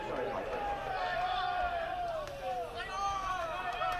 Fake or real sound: real